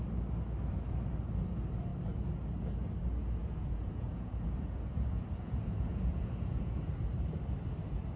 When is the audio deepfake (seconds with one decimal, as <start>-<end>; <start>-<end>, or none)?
3.4-6.8